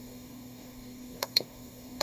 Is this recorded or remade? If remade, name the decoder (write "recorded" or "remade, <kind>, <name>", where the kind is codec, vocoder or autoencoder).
remade, codec, DAC